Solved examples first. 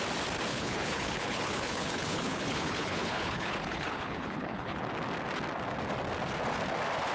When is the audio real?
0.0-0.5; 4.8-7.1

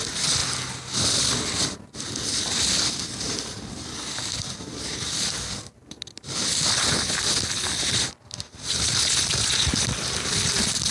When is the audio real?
0.0-10.9

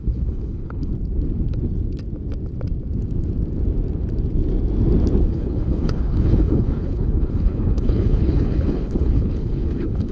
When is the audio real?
0.9-5.2

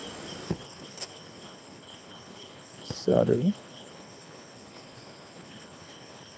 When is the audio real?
0.0-0.5

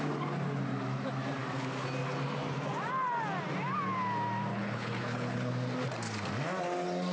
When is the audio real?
0.0-4.5; 5.5-7.1

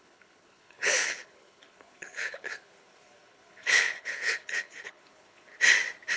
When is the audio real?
5.5-6.2

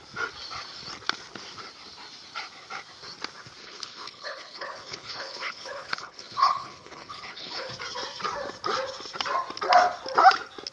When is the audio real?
0.0-3.6; 7.7-10.7